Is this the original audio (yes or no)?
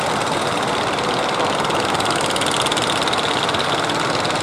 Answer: yes